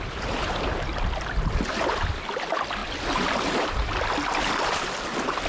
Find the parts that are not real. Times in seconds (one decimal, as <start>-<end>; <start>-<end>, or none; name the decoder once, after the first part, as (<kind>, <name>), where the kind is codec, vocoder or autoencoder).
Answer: none